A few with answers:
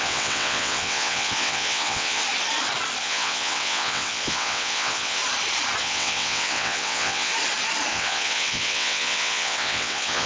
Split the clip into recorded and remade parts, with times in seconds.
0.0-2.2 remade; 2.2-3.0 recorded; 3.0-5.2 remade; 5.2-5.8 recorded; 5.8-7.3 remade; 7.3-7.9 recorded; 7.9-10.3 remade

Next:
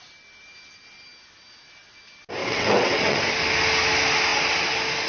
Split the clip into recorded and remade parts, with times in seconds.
0.0-2.4 recorded; 2.4-3.2 remade; 3.2-5.1 recorded

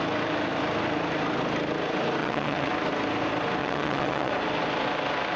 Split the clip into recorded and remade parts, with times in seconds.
0.0-2.2 recorded; 2.2-2.7 remade; 2.7-3.6 recorded; 3.6-4.3 remade; 4.3-5.4 recorded

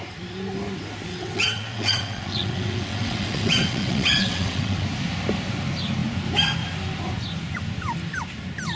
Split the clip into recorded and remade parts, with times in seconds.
0.0-1.1 recorded; 1.1-4.8 remade; 4.8-8.8 recorded

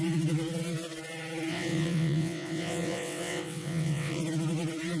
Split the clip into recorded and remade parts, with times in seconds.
0.0-1.5 recorded; 1.5-4.2 remade; 4.2-5.0 recorded

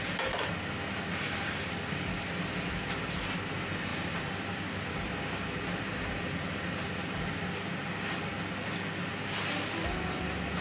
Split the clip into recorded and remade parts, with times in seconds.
0.0-10.6 recorded